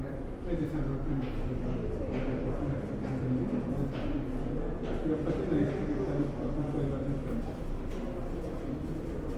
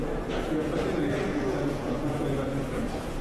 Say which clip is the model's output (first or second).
second